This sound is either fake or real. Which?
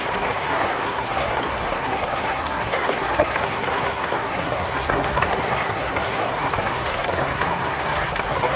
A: fake